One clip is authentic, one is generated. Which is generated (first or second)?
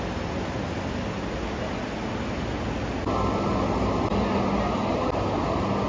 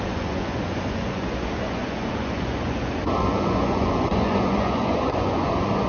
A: second